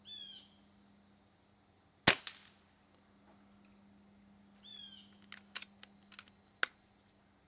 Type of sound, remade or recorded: recorded